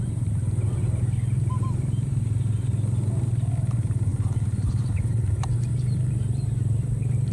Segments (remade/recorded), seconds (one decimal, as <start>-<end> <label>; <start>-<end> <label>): 0.0-0.8 remade; 0.8-1.7 recorded; 1.7-2.7 remade; 2.7-3.6 recorded; 3.6-7.3 remade